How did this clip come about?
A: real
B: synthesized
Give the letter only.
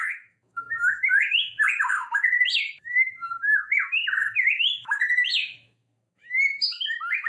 B